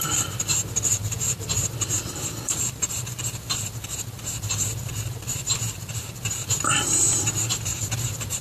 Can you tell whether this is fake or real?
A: fake